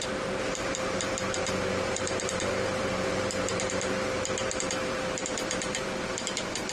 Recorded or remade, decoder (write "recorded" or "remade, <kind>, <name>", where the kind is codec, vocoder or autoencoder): remade, vocoder, BigVGAN v2